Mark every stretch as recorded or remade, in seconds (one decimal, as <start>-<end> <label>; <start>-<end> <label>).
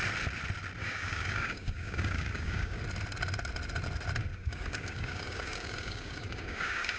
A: 0.0-0.8 recorded; 0.8-2.8 remade; 2.8-4.3 recorded; 4.3-7.0 remade